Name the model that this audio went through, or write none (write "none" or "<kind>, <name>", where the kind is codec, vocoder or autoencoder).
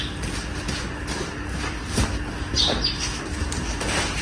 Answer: none